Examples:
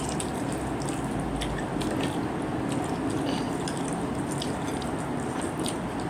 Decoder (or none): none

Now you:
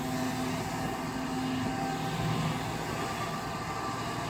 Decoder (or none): none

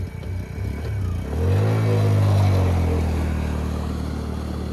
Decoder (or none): none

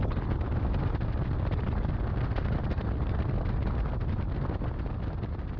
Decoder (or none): none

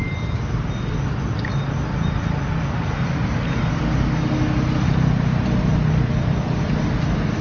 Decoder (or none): none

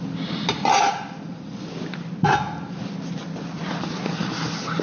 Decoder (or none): none